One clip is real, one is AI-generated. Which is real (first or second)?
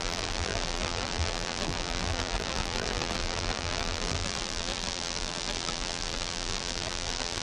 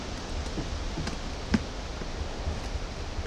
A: second